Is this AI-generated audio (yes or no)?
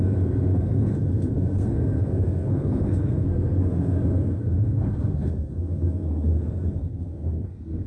yes